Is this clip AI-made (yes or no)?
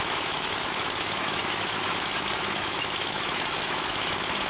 yes